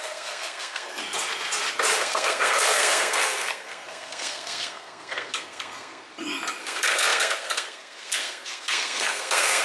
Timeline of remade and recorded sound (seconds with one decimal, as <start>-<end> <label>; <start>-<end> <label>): 0.0-1.0 remade; 1.0-2.0 recorded; 2.0-6.0 remade; 6.0-6.6 recorded; 6.6-9.6 remade